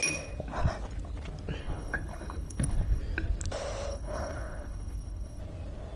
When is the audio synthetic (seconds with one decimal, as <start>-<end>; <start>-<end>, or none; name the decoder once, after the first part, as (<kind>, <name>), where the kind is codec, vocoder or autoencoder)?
1.6-3.0 (codec, HILCodec); 3.9-5.4